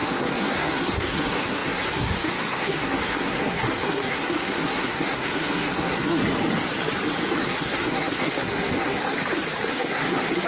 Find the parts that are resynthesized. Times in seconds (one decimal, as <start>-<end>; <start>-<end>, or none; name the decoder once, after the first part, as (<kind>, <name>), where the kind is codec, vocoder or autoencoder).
0.0-6.2 (codec, SNAC); 7.4-9.0; 9.7-10.5